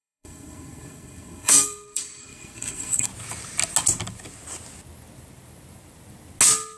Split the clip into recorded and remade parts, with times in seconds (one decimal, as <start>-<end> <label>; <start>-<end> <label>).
0.0-3.1 remade; 3.1-6.8 recorded